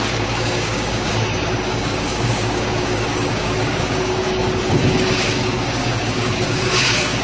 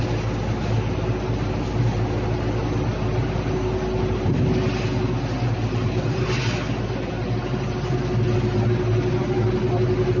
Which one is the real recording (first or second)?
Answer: second